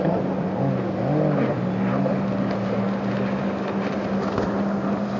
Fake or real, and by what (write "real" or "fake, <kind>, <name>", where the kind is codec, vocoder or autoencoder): real